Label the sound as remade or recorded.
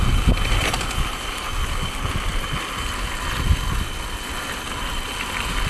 recorded